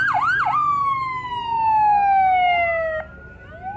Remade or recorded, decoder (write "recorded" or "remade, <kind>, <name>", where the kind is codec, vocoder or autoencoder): recorded